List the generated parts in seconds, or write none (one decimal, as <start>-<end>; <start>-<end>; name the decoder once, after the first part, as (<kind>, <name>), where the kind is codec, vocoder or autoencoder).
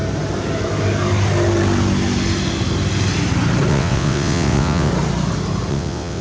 3.7-4.9 (vocoder, WaveNeXt); 5.7-6.2